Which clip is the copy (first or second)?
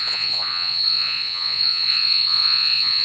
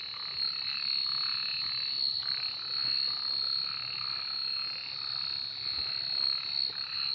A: first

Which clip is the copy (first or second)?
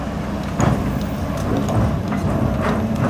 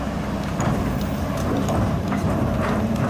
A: second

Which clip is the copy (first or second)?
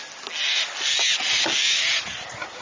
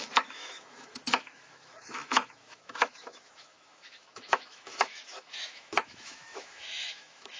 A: second